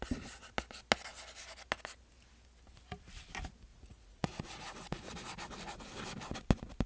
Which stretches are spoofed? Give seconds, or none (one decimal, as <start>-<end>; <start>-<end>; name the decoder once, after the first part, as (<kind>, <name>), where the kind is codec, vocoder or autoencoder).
3.7-5.4 (vocoder, Vocos)